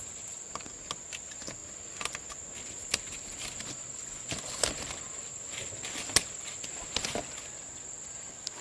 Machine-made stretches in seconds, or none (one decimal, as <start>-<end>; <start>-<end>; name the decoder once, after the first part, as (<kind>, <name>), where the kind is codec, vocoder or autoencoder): none